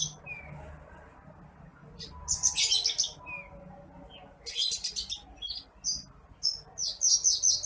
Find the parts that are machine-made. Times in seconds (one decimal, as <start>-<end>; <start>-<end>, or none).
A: none